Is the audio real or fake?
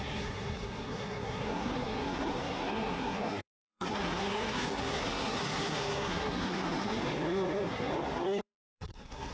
fake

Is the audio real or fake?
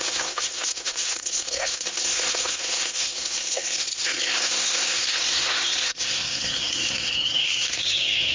fake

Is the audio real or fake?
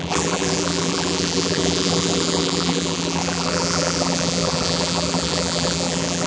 fake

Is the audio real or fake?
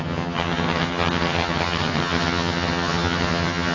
fake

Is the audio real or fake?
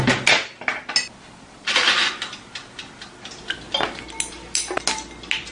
real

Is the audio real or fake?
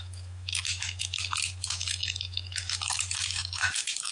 fake